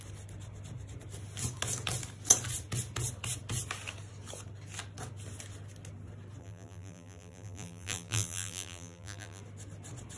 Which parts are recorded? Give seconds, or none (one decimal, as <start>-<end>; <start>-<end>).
0.0-6.4; 9.4-10.2